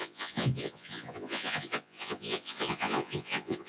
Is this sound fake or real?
fake